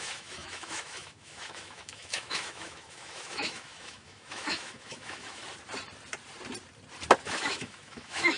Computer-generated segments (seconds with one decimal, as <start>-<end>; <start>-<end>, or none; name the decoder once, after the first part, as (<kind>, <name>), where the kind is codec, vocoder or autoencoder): 0.0-5.4 (autoencoder, DAC-VAE); 7.2-8.4